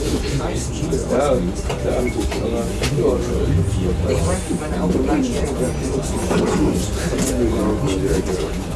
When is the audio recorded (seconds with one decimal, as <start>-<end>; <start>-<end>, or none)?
0.0-8.8